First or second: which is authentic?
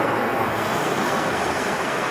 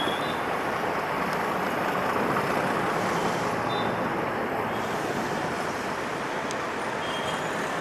second